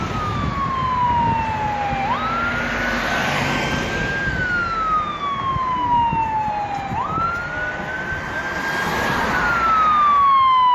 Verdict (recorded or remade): recorded